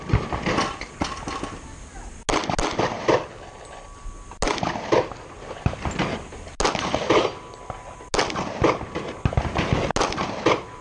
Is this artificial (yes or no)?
no